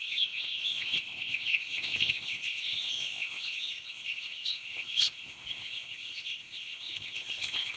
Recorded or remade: remade